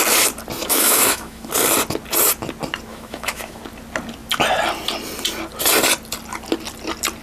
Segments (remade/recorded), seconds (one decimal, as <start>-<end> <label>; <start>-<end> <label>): 0.0-0.6 recorded; 0.6-1.5 remade; 1.5-2.9 recorded; 2.9-3.6 remade; 3.6-7.2 recorded